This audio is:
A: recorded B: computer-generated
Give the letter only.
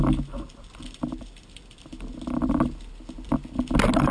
A